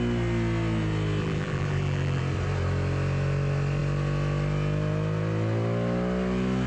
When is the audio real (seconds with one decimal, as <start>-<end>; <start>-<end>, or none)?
0.0-1.2; 2.2-6.7